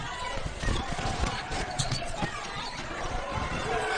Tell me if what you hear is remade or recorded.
remade